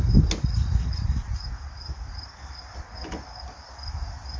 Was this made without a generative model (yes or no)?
yes